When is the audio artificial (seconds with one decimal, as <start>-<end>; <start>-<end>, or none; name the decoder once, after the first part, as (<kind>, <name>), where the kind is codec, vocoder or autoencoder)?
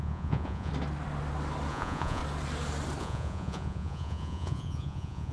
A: 0.0-0.7 (vocoder, Vocos); 1.7-2.2; 3.0-5.3